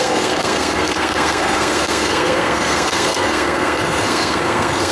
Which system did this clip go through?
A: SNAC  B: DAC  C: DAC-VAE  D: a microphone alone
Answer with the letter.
A